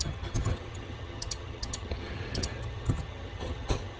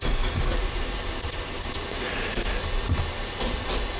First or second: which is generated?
first